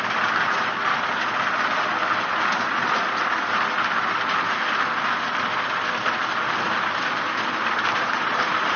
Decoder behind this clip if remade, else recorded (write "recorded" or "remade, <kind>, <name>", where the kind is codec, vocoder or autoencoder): recorded